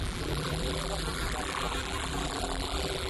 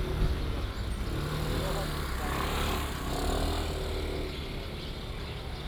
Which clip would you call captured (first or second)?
second